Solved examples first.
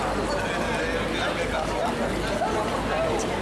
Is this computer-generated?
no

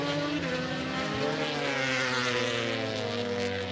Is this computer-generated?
no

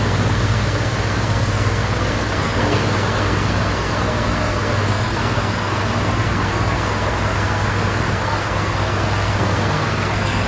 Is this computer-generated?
yes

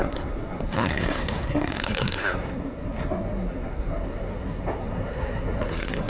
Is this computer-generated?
yes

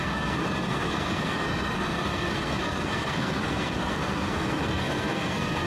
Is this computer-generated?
yes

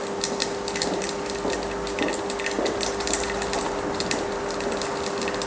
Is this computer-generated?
no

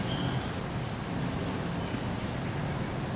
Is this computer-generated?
no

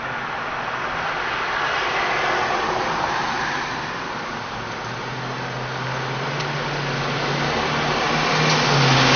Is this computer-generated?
no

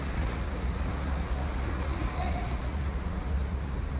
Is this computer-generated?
yes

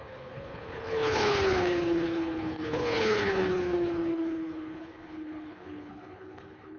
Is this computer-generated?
yes